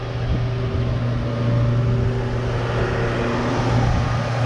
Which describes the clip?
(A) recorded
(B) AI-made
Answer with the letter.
A